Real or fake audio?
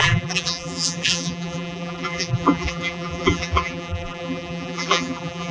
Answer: fake